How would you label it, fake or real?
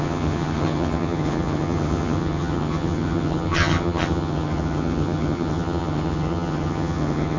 fake